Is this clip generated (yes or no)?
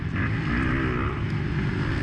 no